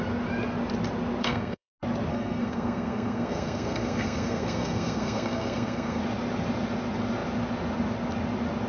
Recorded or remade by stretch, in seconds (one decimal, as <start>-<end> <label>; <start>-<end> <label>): 0.0-1.2 recorded; 1.2-1.7 remade; 1.7-2.1 recorded; 2.1-6.0 remade; 6.0-8.7 recorded